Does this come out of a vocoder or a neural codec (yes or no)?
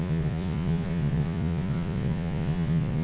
yes